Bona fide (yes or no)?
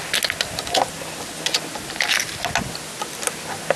yes